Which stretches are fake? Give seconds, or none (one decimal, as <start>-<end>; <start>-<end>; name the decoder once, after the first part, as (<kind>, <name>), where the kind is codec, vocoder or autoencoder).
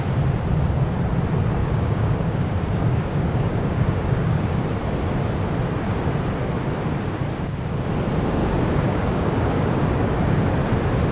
1.6-4.6 (codec, DAC); 8.4-10.4